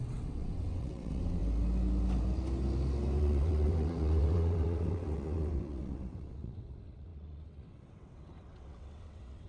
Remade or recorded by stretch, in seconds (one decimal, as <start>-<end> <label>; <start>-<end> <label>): 0.0-1.4 remade; 1.4-3.2 recorded; 3.2-9.5 remade